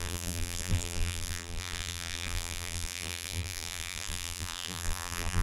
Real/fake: fake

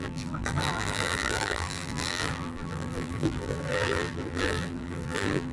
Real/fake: fake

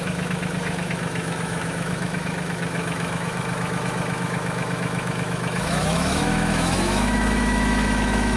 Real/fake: fake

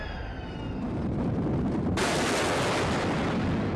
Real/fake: real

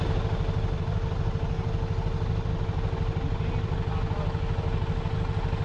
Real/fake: real